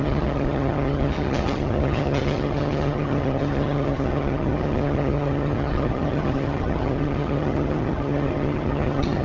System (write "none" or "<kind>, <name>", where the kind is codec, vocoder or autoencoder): vocoder, HiFi-GAN